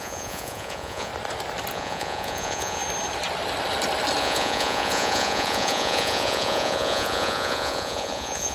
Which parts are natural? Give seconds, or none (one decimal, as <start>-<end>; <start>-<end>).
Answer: 1.1-1.7; 2.8-4.2